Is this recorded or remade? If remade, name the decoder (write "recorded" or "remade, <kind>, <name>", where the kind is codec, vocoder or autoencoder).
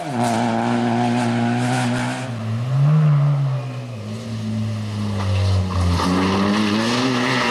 recorded